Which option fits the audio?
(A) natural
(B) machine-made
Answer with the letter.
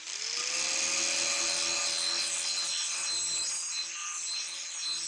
A